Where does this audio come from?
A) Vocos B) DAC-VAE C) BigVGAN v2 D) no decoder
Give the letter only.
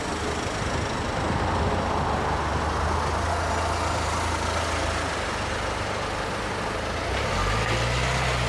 D